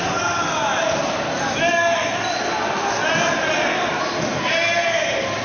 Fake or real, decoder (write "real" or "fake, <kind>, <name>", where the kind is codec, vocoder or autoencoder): real